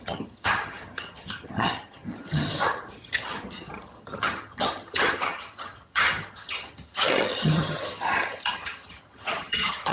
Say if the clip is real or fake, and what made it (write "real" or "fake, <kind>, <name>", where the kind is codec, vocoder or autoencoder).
fake, vocoder, HiFi-GAN